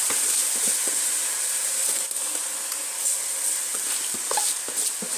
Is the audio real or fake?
real